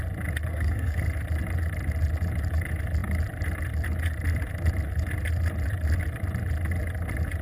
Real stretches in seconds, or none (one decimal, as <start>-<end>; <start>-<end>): 0.0-0.5; 1.0-7.4